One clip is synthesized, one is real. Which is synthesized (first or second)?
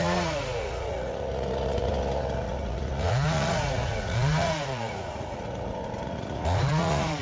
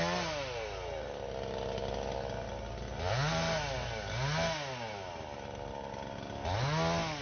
first